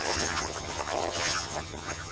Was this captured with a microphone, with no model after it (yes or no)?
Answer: no